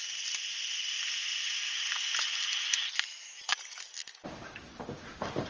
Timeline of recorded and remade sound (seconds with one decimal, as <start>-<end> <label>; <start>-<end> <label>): 0.0-3.1 recorded; 3.1-5.5 remade